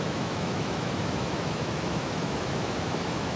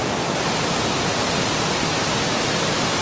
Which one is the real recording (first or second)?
second